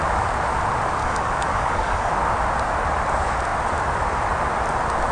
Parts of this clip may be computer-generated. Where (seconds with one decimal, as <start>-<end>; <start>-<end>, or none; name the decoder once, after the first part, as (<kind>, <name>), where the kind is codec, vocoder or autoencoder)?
1.0-2.1 (codec, DAC)